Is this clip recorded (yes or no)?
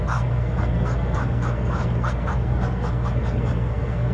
no